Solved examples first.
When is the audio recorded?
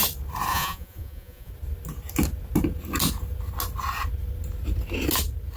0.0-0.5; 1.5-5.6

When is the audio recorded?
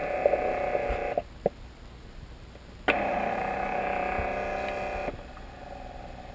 0.0-6.3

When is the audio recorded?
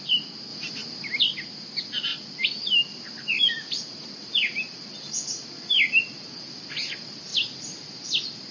0.0-8.5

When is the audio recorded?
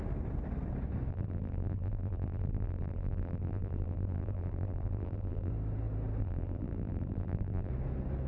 0.0-1.1; 5.5-6.2; 7.7-8.3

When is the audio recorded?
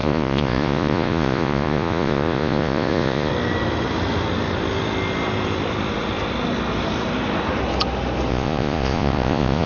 3.3-8.3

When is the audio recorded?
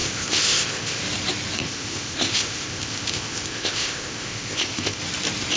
1.0-1.6; 5.0-5.6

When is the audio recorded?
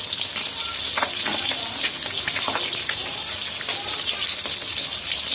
0.0-5.3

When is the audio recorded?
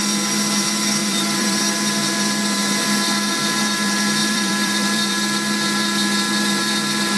0.0-1.0; 1.6-4.2; 5.1-7.2